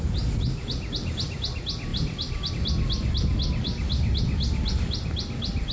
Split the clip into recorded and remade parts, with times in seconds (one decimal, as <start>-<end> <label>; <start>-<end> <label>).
0.0-5.7 recorded

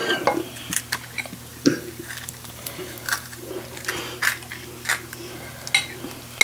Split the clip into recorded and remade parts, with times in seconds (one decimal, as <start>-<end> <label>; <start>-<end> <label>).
0.0-0.8 remade; 0.8-1.5 recorded; 1.5-3.5 remade; 3.5-6.4 recorded

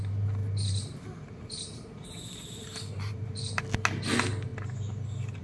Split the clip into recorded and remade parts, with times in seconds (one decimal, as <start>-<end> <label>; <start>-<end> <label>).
0.0-0.4 recorded; 0.4-3.6 remade; 3.6-5.4 recorded

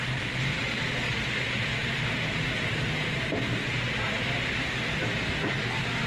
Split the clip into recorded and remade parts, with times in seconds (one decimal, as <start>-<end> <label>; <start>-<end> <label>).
0.0-6.1 remade

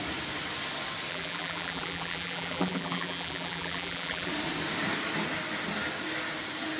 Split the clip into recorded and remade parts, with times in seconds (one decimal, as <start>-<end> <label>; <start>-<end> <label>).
0.0-1.1 recorded; 1.1-4.3 remade; 4.3-6.8 recorded